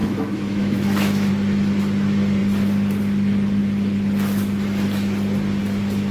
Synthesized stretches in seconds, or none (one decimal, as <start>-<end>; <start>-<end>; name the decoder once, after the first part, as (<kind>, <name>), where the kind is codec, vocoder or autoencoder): 0.0-1.3 (autoencoder, DAC-VAE)